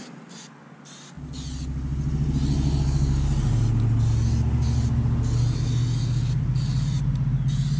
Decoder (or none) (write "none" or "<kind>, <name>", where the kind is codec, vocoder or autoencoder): none